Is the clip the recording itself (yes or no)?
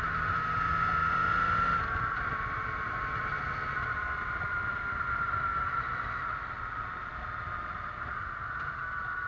yes